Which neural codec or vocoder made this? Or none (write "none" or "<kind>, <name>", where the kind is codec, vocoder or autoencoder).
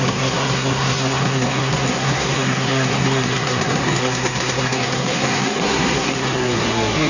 codec, SNAC